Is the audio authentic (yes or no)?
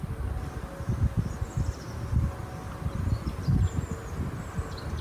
yes